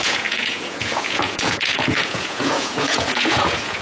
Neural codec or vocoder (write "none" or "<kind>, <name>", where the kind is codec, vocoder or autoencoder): vocoder, Vocos